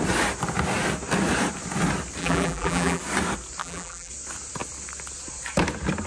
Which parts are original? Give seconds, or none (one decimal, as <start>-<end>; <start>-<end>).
0.0-2.2; 3.0-3.6; 4.1-6.1